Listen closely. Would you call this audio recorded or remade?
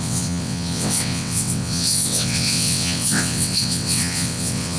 remade